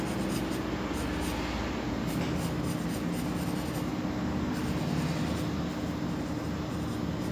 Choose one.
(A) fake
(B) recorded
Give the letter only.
B